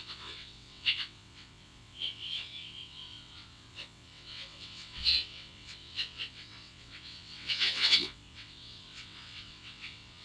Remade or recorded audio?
remade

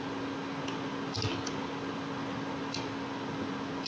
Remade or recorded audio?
recorded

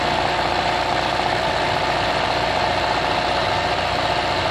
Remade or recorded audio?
recorded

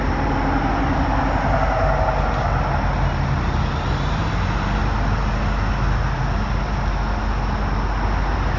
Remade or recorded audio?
recorded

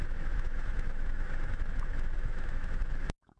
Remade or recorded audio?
remade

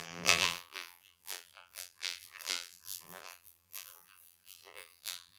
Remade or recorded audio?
remade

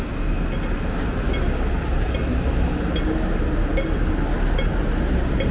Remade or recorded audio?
recorded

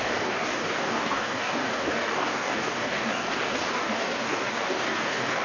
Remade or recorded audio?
remade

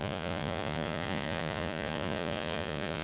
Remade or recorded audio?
remade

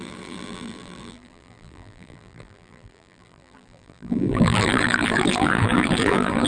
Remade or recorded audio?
remade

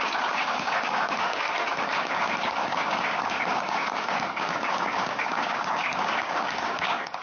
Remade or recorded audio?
remade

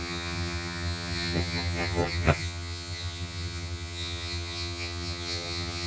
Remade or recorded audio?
remade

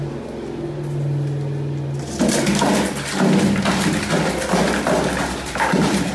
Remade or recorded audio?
recorded